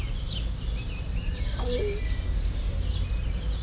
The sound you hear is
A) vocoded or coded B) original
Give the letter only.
B